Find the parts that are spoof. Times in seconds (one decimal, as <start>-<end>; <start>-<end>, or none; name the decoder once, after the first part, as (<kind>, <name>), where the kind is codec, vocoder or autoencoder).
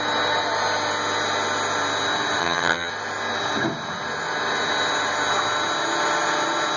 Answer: 2.4-2.9 (vocoder, HiFi-GAN)